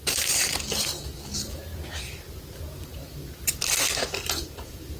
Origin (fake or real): fake